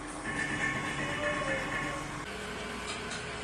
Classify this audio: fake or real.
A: real